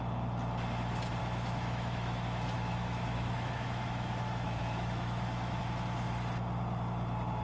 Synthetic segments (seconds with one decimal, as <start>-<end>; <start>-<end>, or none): 1.2-5.6